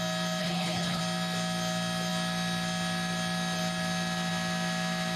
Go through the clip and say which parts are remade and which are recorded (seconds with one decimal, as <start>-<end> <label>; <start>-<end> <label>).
0.0-0.4 recorded; 0.4-1.0 remade; 1.0-5.2 recorded